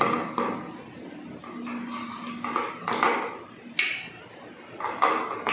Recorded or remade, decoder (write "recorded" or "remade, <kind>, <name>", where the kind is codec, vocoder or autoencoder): recorded